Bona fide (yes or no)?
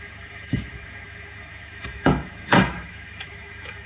no